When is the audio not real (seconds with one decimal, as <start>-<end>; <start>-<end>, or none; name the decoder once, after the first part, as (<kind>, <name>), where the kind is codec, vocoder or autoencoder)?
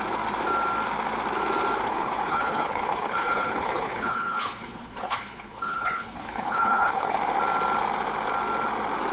1.9-7.2 (codec, HILCodec)